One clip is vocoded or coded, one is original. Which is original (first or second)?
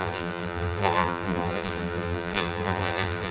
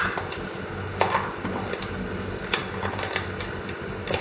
second